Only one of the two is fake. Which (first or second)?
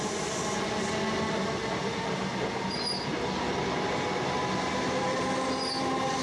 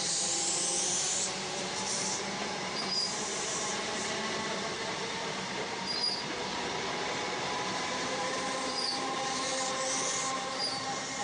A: second